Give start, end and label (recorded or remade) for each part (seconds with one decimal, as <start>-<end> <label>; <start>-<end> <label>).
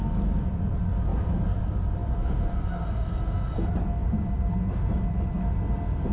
0.0-4.0 recorded; 4.0-5.1 remade; 5.1-6.1 recorded